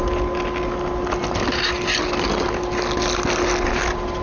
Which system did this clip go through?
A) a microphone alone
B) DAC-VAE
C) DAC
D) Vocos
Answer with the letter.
A